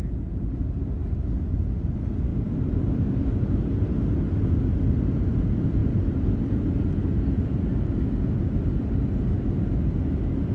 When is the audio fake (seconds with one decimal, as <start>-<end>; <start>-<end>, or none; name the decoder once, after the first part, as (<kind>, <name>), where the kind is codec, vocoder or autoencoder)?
1.0-1.5 (codec, DAC)